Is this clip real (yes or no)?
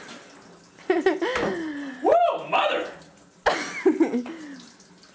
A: yes